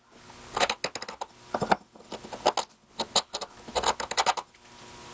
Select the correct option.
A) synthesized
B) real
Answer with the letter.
B